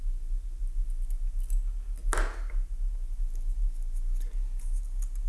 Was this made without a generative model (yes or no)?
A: yes